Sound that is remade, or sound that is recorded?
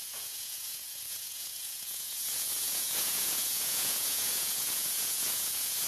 remade